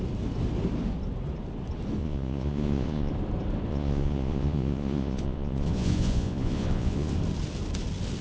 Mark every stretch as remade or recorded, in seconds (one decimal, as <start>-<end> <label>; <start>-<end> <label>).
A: 0.0-2.0 recorded; 2.0-3.1 remade; 3.1-3.7 recorded; 3.7-7.1 remade; 7.1-8.2 recorded